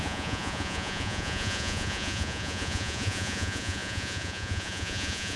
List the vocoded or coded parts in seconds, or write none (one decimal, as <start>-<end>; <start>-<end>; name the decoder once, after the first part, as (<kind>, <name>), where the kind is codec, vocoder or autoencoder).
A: 0.0-5.4 (vocoder, Vocos)